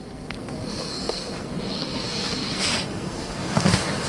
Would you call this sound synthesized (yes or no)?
yes